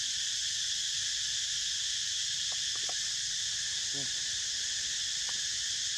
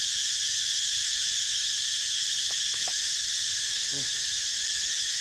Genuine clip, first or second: first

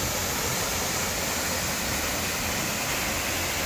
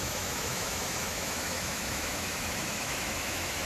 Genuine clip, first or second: first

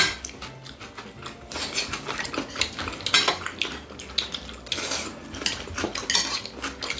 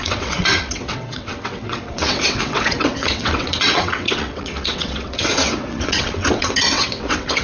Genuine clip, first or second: first